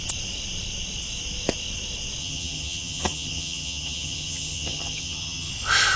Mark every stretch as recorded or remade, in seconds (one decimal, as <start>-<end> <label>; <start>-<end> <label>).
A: 0.0-2.2 recorded; 2.2-5.5 remade; 5.5-6.0 recorded